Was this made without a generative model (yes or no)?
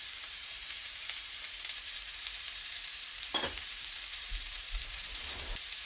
no